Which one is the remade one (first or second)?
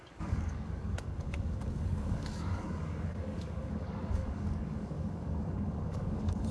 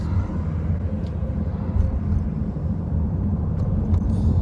first